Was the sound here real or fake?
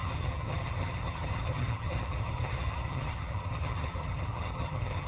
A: fake